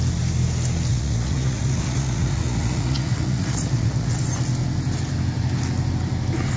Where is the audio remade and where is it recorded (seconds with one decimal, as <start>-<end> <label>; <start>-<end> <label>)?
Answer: 0.0-0.9 recorded; 0.9-4.2 remade; 4.2-6.6 recorded